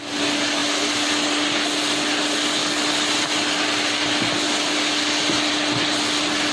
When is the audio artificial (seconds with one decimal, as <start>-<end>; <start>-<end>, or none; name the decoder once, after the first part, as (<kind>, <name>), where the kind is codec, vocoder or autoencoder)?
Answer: none